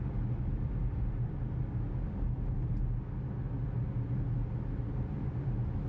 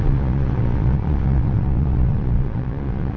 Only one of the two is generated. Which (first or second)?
second